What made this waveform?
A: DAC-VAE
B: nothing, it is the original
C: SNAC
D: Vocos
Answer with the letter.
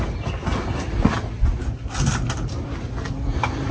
B